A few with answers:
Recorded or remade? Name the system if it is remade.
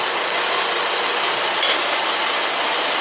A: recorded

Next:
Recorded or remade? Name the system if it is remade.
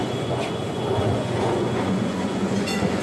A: remade, vocoder, Vocos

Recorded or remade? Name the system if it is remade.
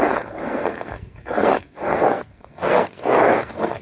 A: remade, codec, SNAC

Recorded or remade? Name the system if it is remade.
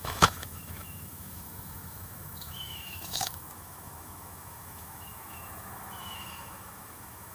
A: remade, autoencoder, DAC-VAE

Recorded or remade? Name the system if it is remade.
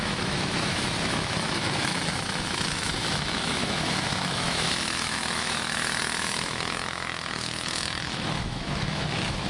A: remade, autoencoder, DAC-VAE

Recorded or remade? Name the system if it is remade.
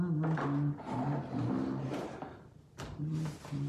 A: recorded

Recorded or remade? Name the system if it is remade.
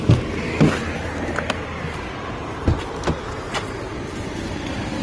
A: recorded